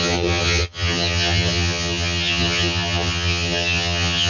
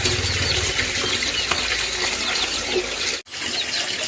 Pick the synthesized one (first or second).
first